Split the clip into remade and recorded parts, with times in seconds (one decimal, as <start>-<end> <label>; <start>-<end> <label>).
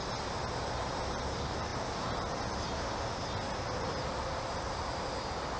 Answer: 0.0-5.6 recorded